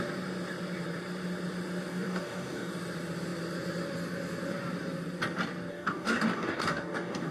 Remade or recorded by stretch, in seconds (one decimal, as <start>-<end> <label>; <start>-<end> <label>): 0.0-1.9 recorded; 1.9-2.7 remade; 2.7-5.7 recorded; 5.7-7.3 remade